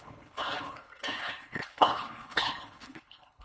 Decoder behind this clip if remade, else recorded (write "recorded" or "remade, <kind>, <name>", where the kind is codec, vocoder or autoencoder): remade, codec, HILCodec